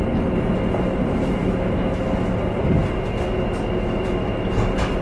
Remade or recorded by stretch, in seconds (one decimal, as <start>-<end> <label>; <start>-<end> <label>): 0.0-1.4 recorded; 1.4-2.0 remade; 2.0-5.0 recorded